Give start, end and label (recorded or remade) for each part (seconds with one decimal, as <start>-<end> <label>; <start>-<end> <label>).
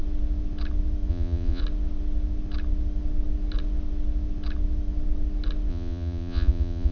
0.0-1.1 recorded; 1.1-1.6 remade; 1.6-5.7 recorded; 5.7-6.9 remade